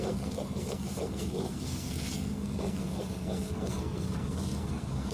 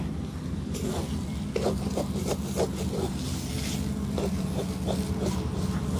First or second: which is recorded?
second